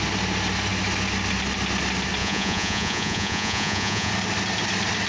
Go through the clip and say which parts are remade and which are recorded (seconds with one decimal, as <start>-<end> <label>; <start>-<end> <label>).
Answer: 0.0-2.2 recorded; 2.2-4.1 remade; 4.1-5.1 recorded

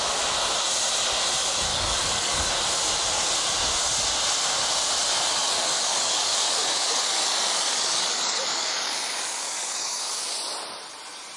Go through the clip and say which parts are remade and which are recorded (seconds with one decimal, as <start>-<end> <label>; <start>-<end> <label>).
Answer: 0.0-1.7 recorded; 1.7-2.5 remade; 2.5-5.4 recorded; 5.4-10.2 remade; 10.2-11.4 recorded

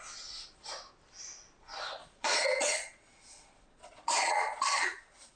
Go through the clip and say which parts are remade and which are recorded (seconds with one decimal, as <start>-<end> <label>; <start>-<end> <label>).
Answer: 0.0-2.0 recorded; 2.0-5.4 remade

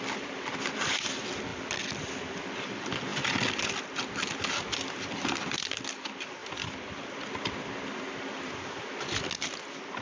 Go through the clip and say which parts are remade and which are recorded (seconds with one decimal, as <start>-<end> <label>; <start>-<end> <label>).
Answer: 0.0-1.5 recorded; 1.5-2.4 remade; 2.4-6.4 recorded; 6.4-7.2 remade; 7.2-10.0 recorded

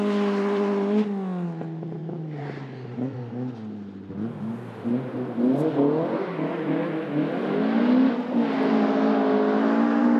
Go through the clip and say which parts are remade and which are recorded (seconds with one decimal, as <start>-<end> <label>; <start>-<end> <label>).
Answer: 0.0-2.0 recorded; 2.0-3.2 remade; 3.2-10.2 recorded

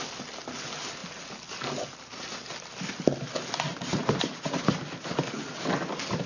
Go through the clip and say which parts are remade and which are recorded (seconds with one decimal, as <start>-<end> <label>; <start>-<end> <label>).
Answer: 0.0-6.3 recorded

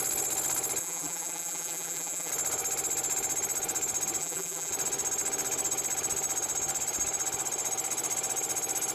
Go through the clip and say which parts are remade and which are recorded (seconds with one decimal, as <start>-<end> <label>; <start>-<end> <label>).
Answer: 0.0-0.8 recorded; 0.8-2.3 remade; 2.3-4.2 recorded; 4.2-4.7 remade; 4.7-8.9 recorded